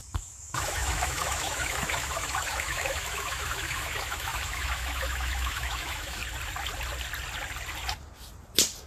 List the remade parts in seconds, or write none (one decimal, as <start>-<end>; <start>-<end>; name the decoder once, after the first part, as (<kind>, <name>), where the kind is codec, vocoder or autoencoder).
0.0-6.2 (autoencoder, DAC-VAE)